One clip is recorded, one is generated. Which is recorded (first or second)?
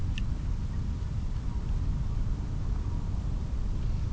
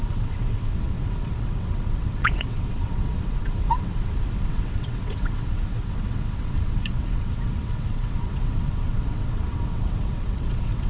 first